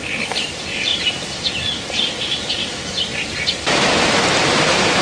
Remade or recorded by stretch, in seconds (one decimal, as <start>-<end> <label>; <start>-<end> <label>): 0.0-5.0 recorded